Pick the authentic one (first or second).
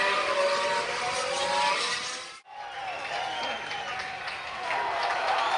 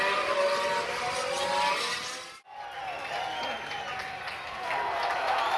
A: second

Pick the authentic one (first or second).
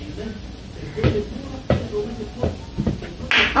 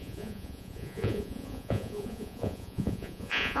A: first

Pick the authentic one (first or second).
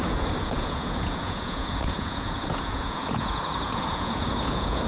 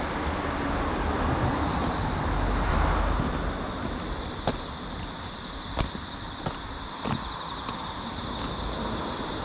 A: second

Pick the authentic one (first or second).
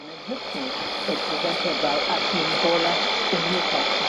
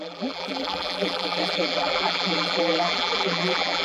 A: first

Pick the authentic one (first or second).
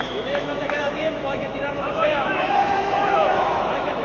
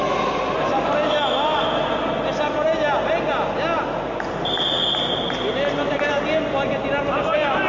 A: second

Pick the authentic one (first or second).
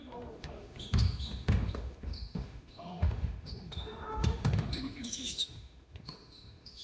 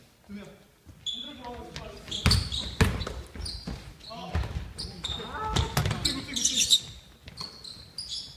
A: second